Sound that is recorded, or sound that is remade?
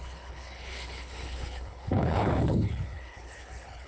remade